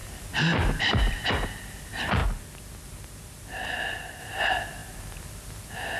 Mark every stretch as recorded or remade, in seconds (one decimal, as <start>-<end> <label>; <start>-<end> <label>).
0.0-1.3 remade; 1.3-6.0 recorded